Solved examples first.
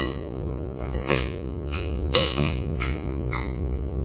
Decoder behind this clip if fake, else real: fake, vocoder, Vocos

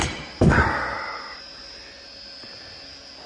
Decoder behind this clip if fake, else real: real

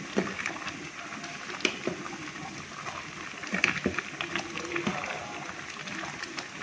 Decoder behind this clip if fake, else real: real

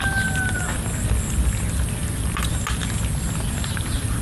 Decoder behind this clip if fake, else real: real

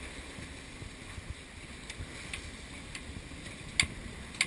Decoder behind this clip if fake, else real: real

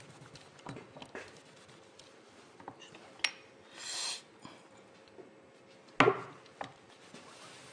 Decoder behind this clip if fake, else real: real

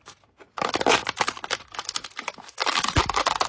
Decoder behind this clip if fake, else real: real